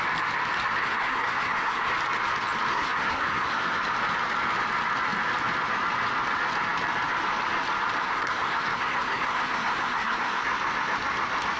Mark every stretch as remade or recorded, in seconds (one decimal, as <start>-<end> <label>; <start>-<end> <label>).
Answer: 0.0-0.8 recorded; 0.8-1.9 remade; 1.9-2.7 recorded; 2.7-3.8 remade; 3.8-8.0 recorded; 8.0-10.4 remade; 10.4-11.6 recorded